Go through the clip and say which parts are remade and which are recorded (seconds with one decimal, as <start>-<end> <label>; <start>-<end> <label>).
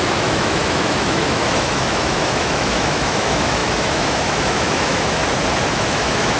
0.0-5.2 remade; 5.2-5.7 recorded; 5.7-6.4 remade